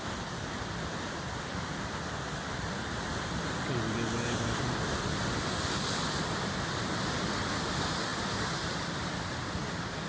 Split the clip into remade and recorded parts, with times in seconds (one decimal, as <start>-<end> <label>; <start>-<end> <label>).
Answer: 0.0-10.1 recorded

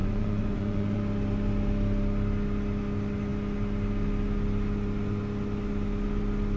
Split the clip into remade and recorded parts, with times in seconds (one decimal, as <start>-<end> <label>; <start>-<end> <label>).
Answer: 0.0-1.0 remade; 1.0-6.6 recorded

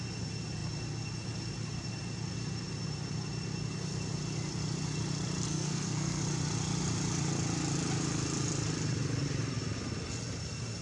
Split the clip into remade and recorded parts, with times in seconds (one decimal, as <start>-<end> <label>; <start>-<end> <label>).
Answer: 0.0-5.5 recorded; 5.5-6.2 remade; 6.2-10.8 recorded

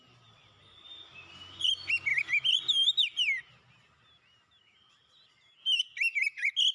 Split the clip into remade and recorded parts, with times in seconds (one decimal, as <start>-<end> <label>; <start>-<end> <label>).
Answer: 0.0-6.7 recorded

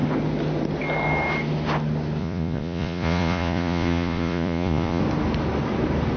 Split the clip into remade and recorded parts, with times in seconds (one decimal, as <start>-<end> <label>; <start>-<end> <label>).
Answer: 0.0-2.2 recorded; 2.2-5.0 remade; 5.0-6.2 recorded